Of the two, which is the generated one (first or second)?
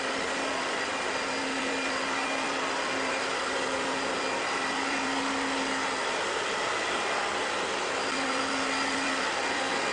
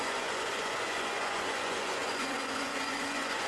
second